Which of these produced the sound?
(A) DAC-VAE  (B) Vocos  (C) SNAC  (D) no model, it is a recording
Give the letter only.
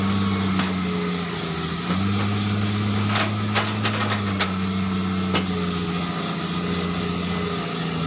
D